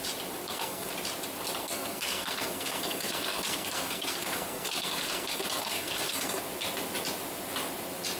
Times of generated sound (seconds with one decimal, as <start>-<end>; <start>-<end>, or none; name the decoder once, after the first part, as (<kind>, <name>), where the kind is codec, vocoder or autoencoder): 0.4-0.9 (codec, SNAC); 1.6-6.4